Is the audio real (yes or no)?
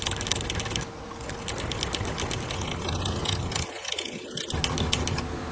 yes